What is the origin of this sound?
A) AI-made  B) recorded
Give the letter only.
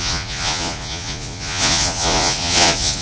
A